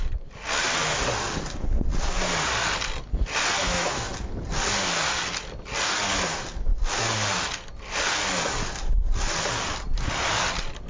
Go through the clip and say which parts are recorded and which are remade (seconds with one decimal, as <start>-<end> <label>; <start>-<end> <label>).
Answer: 0.0-3.6 recorded; 3.6-4.1 remade; 4.1-10.9 recorded